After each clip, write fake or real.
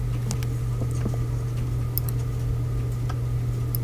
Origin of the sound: real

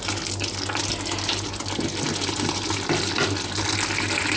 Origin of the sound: real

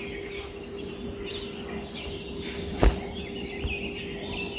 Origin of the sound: real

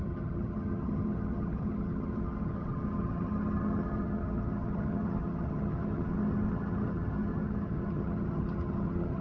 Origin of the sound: fake